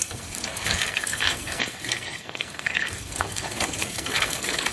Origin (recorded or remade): remade